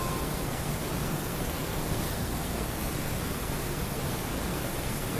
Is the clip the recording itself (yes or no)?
no